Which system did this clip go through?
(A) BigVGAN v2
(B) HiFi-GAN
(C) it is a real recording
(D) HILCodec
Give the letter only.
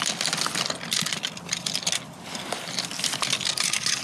C